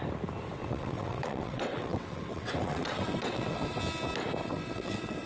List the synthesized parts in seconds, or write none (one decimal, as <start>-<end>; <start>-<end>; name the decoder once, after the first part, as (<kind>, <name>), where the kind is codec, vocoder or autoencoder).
0.6-3.8 (vocoder, WaveNeXt); 4.4-5.3